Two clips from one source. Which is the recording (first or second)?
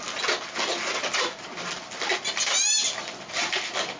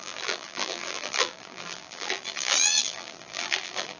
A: first